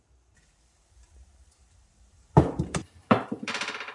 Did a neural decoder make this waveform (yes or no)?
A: yes